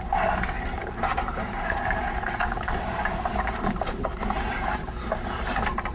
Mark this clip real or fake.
fake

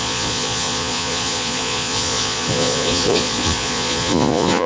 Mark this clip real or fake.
fake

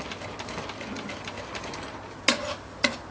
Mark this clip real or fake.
real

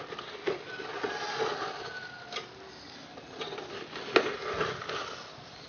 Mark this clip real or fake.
real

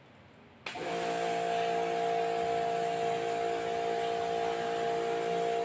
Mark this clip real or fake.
real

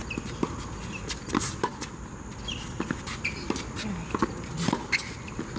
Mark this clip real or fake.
real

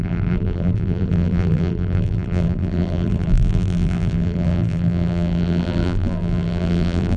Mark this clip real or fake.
fake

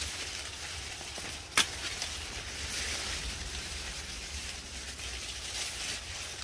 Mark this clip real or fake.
real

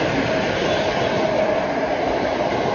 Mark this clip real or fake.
real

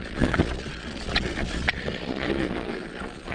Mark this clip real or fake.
fake